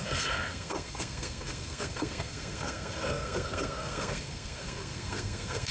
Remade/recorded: remade